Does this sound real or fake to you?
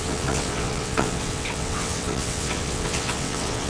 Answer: fake